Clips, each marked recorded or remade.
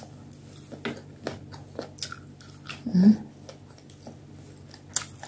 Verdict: recorded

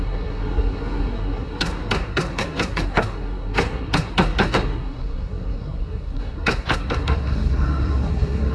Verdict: remade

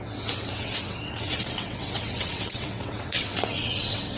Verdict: remade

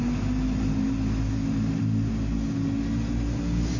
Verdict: recorded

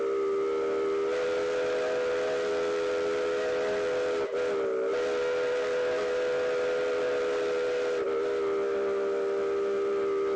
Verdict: recorded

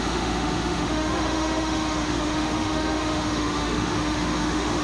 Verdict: remade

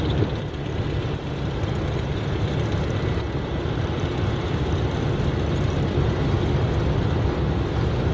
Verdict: recorded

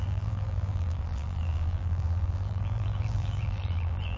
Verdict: remade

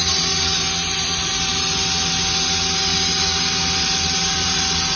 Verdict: recorded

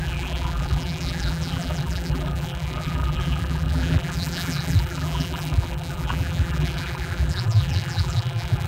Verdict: remade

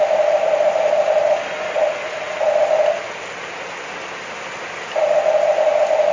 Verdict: recorded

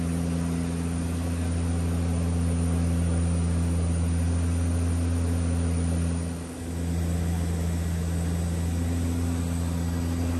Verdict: recorded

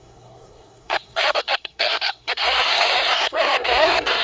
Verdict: remade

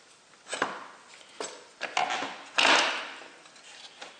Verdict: recorded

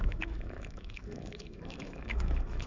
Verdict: remade